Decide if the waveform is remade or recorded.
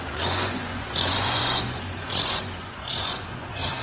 remade